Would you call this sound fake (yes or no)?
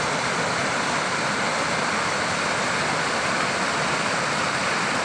no